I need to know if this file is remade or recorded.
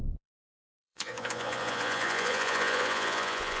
remade